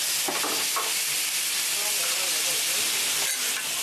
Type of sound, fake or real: real